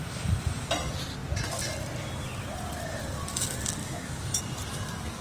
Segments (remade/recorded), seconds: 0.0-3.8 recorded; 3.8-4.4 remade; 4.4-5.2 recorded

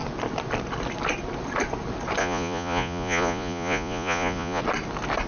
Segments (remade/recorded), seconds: 0.0-2.2 recorded; 2.2-4.6 remade; 4.6-5.3 recorded

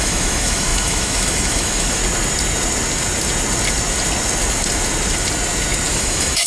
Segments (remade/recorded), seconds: 0.0-2.0 remade; 2.0-5.9 recorded; 5.9-6.5 remade

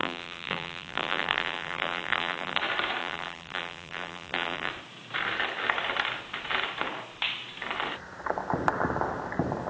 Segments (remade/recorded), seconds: 0.0-2.6 remade; 2.6-3.0 recorded; 3.0-4.7 remade; 4.7-9.7 recorded

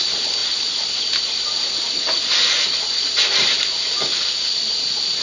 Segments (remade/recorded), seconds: 0.0-5.2 recorded

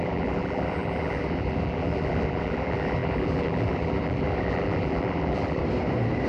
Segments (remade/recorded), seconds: 0.0-5.6 remade; 5.6-6.3 recorded

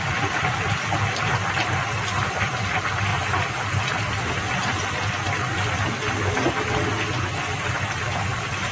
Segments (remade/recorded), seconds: 0.0-8.7 recorded